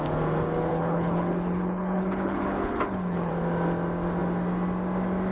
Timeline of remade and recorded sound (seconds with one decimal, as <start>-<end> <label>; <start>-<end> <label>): 0.0-0.7 recorded; 0.7-3.3 remade; 3.3-5.3 recorded